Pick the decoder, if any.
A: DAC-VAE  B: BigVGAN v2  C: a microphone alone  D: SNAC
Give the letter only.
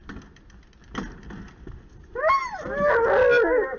C